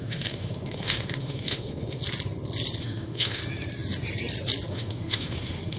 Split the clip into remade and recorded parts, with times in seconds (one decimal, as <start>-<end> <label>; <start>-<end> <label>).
0.0-2.0 remade; 2.0-2.8 recorded; 2.8-3.4 remade; 3.4-4.7 recorded; 4.7-5.8 remade